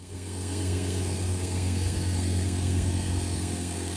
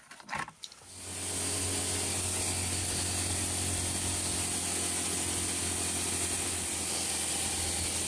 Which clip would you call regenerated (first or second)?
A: first